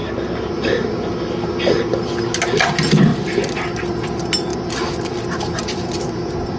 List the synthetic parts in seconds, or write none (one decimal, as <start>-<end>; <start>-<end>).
none

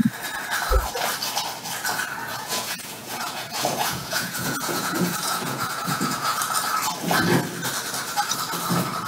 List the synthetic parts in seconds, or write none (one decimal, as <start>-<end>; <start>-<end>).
2.3-6.4

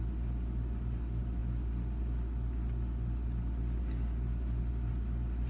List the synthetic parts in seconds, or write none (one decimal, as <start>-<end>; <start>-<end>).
none

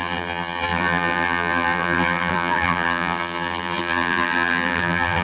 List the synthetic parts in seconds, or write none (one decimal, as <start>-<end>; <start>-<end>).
0.0-5.2

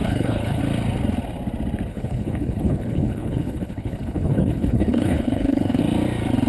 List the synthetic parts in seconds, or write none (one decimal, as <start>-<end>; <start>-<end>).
0.0-0.6; 1.9-5.8

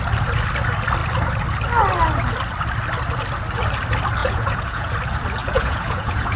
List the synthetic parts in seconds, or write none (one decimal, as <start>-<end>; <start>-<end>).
4.2-4.9; 5.4-6.4

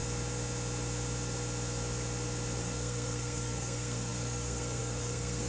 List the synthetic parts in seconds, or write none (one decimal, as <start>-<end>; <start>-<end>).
2.6-5.5

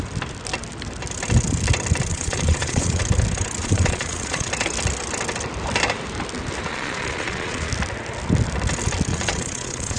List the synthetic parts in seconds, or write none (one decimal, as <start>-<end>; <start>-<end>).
2.1-3.0; 3.6-4.5; 6.7-7.7; 9.1-10.0